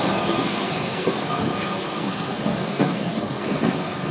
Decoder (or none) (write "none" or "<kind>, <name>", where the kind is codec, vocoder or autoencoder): codec, SNAC